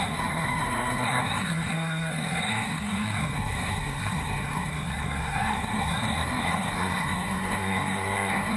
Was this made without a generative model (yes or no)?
no